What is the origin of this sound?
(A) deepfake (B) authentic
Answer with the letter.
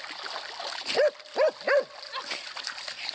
B